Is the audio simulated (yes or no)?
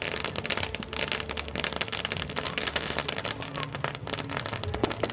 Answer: no